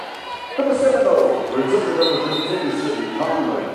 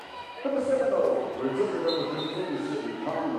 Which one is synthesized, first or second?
second